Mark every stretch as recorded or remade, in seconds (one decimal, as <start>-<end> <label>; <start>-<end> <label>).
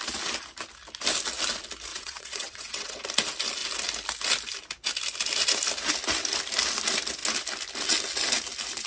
0.0-1.9 recorded; 1.9-3.0 remade; 3.0-8.9 recorded